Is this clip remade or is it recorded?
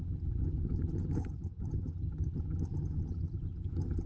remade